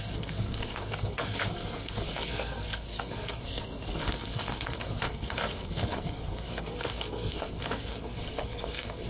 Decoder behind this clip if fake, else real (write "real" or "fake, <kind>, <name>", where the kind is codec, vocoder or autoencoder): fake, codec, SNAC